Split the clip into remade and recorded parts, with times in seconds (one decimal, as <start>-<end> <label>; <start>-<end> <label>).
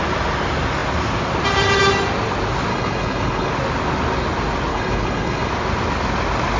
0.0-2.7 recorded; 2.7-3.5 remade; 3.5-4.7 recorded; 4.7-5.5 remade; 5.5-6.6 recorded